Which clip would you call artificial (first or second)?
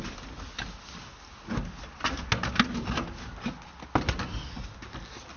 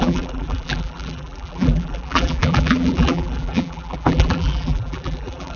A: second